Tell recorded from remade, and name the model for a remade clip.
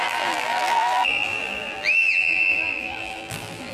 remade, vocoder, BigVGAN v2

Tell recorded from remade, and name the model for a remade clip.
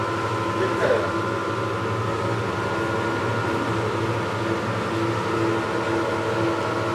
recorded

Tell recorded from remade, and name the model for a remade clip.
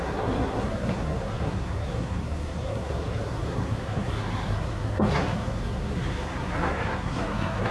remade, codec, SNAC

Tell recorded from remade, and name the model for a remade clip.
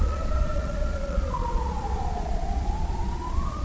remade, vocoder, Vocos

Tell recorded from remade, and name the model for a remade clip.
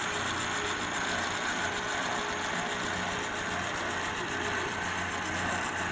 recorded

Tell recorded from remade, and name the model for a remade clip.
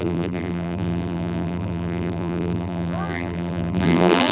remade, vocoder, BigVGAN v2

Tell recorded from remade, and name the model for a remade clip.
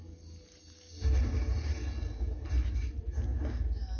recorded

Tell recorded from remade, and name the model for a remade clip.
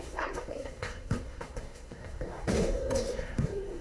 remade, codec, SNAC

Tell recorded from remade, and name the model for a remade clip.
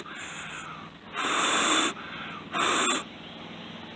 recorded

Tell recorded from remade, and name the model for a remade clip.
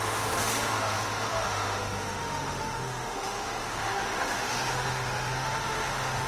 remade, autoencoder, DAC-VAE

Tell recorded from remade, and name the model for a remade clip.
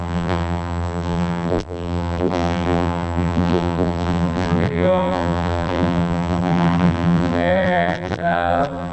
remade, vocoder, BigVGAN v2